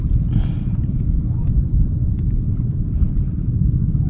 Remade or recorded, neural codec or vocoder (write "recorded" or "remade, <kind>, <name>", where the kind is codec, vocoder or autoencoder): recorded